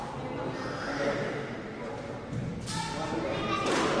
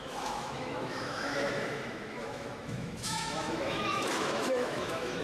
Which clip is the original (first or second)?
first